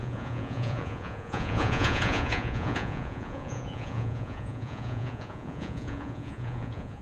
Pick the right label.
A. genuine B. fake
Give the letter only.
B